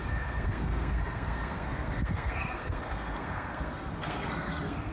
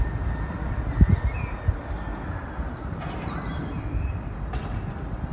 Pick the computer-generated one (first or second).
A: first